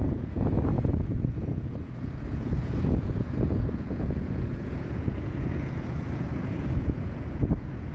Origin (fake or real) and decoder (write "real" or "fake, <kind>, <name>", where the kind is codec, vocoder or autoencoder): fake, vocoder, Vocos